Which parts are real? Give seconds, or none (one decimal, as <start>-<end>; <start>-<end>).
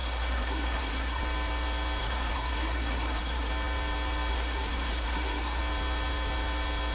1.2-2.0; 3.5-4.3; 5.6-6.9